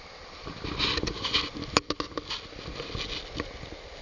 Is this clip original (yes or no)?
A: yes